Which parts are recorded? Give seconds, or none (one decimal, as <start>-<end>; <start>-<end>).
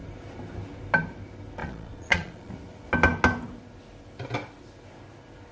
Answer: 0.0-1.6; 2.5-5.5